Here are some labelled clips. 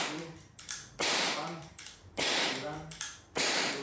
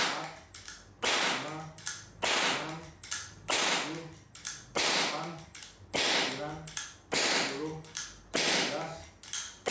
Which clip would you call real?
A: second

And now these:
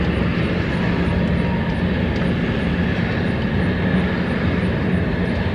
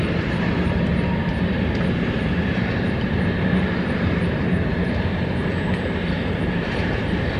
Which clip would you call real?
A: first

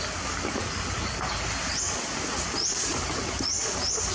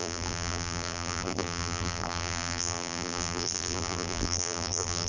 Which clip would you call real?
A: first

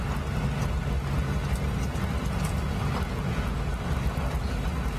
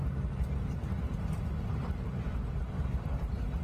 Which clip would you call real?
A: first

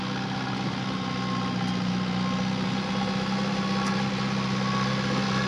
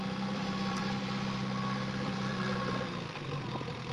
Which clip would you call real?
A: first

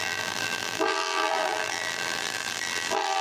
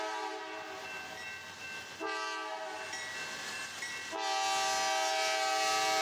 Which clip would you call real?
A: second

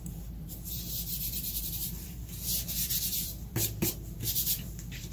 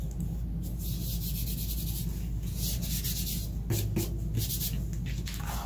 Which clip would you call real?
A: second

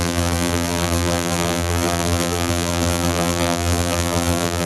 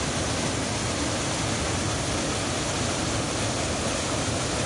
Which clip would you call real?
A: second